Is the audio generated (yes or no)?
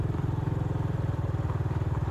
yes